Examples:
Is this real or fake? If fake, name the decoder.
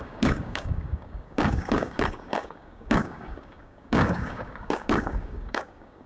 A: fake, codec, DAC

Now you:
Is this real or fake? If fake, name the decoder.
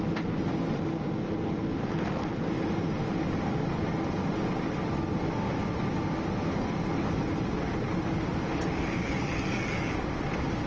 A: real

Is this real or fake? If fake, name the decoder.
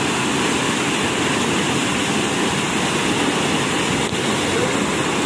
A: real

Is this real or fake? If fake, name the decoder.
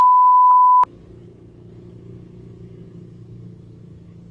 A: fake, codec, DAC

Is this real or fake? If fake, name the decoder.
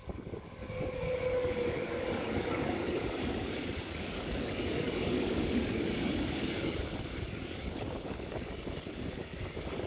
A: fake, codec, DAC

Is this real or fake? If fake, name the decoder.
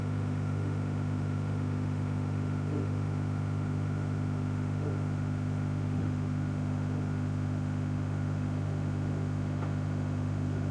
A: fake, autoencoder, DAC-VAE